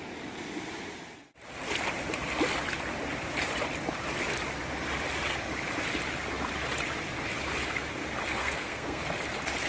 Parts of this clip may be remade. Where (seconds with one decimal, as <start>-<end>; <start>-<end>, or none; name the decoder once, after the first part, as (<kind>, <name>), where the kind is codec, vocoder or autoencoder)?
8.4-9.0 (codec, SNAC)